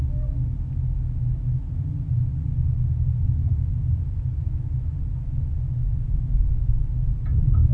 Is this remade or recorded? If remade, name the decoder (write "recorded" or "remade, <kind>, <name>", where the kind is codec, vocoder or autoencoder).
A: recorded